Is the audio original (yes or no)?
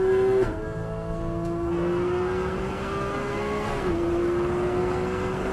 no